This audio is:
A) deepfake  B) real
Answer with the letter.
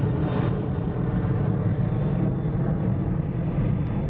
B